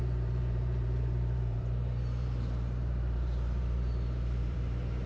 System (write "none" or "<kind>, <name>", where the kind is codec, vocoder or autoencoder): vocoder, BigVGAN v2